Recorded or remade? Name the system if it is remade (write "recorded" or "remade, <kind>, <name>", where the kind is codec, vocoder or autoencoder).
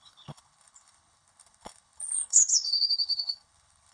remade, codec, HILCodec